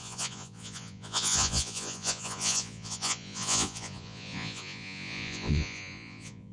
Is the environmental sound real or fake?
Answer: fake